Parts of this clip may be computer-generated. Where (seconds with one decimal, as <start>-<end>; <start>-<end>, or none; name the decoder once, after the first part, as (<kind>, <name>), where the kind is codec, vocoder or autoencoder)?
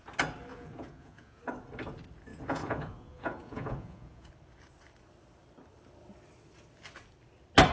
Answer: 0.5-1.4 (vocoder, Vocos); 2.3-4.3